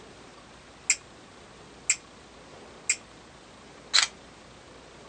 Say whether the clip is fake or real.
real